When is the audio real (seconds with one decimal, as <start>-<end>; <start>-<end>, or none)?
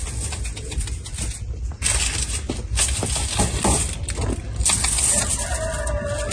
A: 0.0-6.3